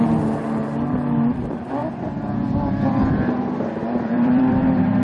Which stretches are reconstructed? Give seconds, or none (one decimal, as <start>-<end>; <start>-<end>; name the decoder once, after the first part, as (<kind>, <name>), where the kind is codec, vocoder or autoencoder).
1.8-5.0 (vocoder, BigVGAN v2)